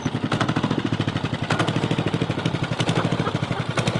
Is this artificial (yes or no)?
no